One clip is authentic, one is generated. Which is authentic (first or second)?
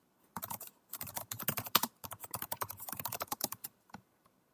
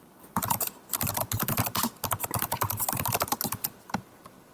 second